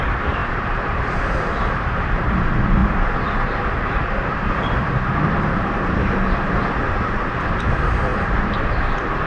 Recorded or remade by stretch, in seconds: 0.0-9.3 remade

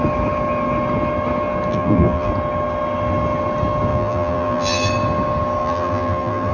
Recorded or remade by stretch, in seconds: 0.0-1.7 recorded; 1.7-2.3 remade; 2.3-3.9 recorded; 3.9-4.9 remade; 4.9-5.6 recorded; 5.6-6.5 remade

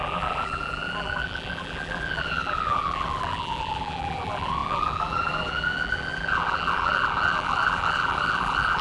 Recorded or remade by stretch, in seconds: 0.0-8.8 remade

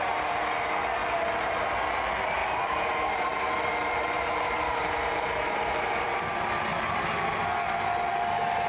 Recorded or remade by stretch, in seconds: 0.0-1.0 recorded; 1.0-1.8 remade; 1.8-2.4 recorded; 2.4-6.2 remade; 6.2-8.7 recorded

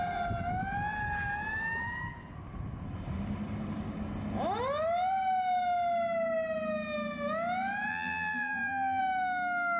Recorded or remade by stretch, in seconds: 0.0-7.9 recorded; 7.9-9.0 remade; 9.0-9.8 recorded